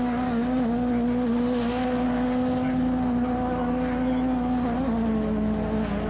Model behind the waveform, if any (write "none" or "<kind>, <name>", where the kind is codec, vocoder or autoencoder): none